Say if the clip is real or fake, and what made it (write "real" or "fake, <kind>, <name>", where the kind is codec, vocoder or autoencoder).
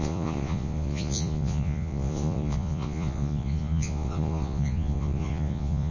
fake, vocoder, Vocos